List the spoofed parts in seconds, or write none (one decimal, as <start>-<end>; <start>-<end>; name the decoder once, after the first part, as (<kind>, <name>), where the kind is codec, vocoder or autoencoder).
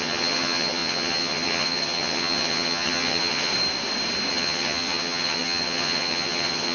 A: 0.0-3.5 (vocoder, HiFi-GAN); 4.3-6.7